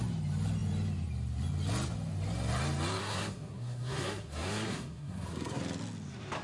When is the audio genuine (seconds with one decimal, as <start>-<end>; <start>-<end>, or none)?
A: 0.0-3.0; 5.6-6.4